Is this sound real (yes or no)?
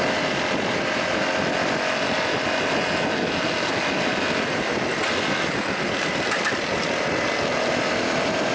yes